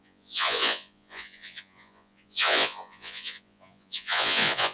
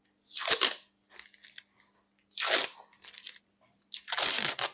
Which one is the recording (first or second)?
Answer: second